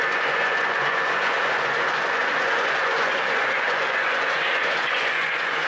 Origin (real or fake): fake